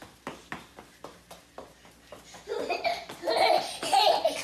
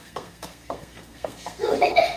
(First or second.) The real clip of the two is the first